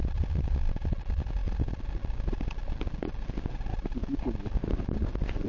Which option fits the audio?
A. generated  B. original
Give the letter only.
B